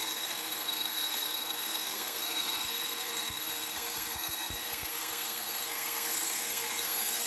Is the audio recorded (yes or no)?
no